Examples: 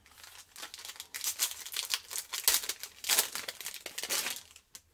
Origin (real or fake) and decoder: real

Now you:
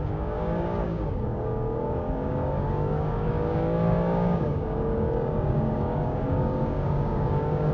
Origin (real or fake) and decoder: fake, codec, DAC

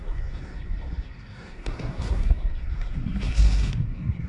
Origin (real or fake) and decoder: fake, codec, SNAC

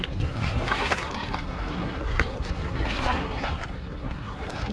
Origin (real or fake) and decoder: fake, codec, SNAC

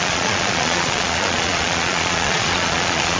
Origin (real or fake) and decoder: fake, vocoder, Vocos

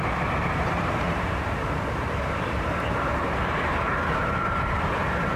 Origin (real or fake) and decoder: fake, vocoder, BigVGAN v2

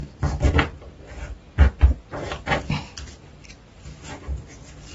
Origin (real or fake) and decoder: real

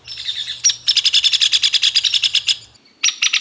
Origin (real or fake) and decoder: real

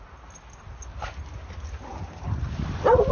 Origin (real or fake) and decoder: real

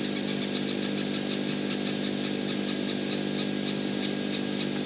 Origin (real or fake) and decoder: real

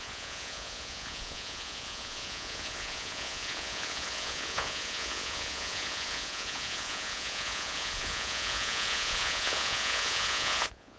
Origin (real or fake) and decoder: fake, vocoder, Vocos